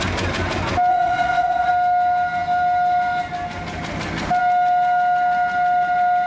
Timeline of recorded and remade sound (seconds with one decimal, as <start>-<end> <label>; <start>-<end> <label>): 0.0-0.9 recorded; 0.9-1.7 remade; 1.7-6.3 recorded